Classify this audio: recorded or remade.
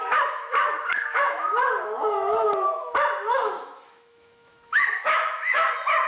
remade